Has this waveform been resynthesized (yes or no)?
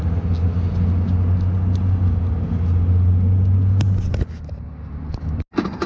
no